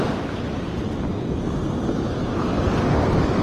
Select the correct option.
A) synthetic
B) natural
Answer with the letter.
B